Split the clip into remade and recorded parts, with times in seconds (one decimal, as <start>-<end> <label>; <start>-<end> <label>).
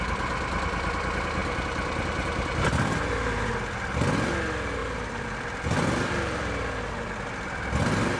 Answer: 0.0-1.4 recorded; 1.4-3.5 remade; 3.5-4.8 recorded; 4.8-6.9 remade; 6.9-8.2 recorded